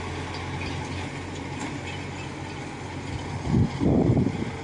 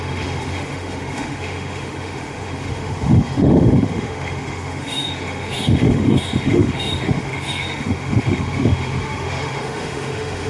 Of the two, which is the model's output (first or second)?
second